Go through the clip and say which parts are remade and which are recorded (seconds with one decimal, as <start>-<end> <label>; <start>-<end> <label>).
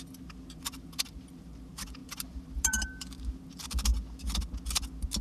0.0-5.2 recorded